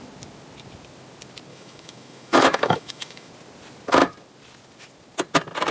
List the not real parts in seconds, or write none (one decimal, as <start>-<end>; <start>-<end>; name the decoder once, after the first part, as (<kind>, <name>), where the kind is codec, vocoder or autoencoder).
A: 1.5-3.3 (autoencoder, DAC-VAE)